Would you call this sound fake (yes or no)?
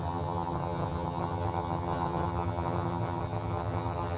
yes